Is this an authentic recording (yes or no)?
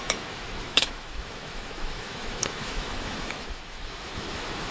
no